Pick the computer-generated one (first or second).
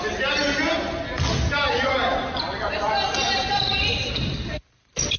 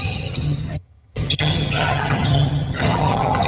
second